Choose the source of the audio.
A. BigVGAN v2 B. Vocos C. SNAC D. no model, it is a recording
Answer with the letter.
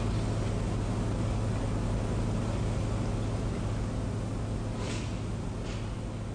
D